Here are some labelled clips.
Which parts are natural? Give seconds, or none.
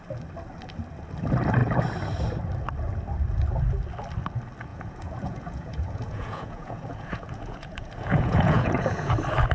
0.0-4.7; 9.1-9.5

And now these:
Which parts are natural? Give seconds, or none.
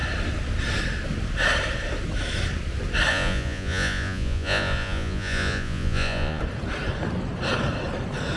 0.0-3.1; 6.4-8.4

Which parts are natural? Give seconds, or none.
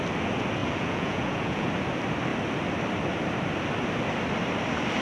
0.0-0.6; 1.7-5.0